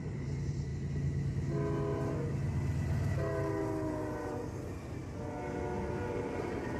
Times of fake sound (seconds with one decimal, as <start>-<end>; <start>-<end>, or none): 0.0-0.7; 3.9-5.0; 6.1-6.8